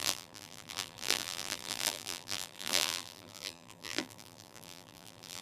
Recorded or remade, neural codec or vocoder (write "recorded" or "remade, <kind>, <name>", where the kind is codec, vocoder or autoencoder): remade, vocoder, BigVGAN v2